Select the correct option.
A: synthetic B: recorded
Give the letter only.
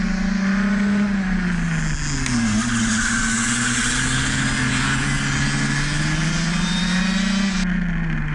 B